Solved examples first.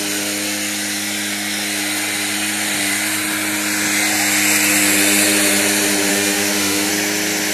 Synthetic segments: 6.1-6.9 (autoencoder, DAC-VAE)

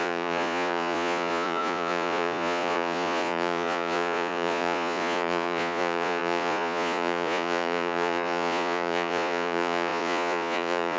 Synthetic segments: 0.0-11.0 (vocoder, Vocos)

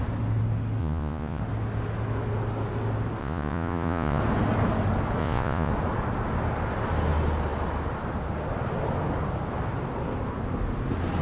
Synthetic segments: 0.8-1.4 (vocoder, Vocos); 3.2-4.2; 5.2-5.7